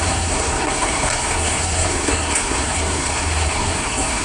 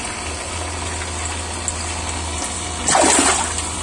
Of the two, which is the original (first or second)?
second